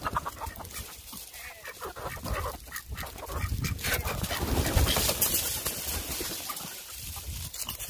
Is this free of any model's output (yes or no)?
yes